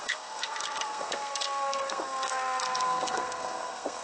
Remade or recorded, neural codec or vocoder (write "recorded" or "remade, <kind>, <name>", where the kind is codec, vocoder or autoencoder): remade, codec, SNAC